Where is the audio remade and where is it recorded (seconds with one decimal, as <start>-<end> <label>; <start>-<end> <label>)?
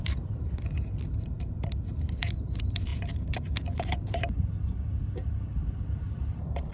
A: 0.0-6.7 remade